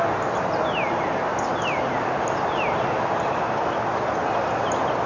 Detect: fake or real real